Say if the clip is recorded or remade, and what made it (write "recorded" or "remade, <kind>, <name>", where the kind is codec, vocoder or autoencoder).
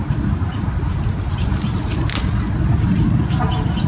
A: remade, vocoder, BigVGAN v2